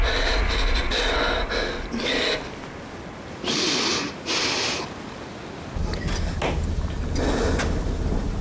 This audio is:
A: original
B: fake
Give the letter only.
A